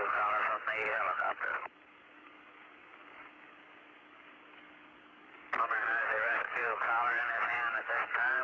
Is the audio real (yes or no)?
no